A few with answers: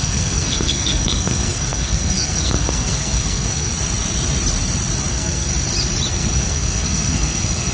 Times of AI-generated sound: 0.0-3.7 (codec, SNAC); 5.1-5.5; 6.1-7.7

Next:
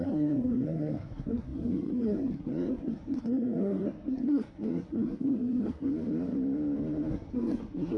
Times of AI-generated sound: 0.0-5.9 (codec, SNAC); 7.1-8.0

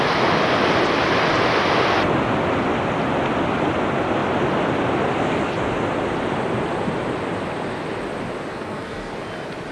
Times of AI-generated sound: 8.5-9.1 (codec, SNAC)

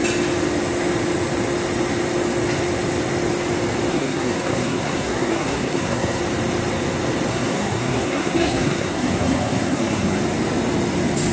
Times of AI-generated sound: 3.9-6.2 (codec, SNAC); 7.3-10.2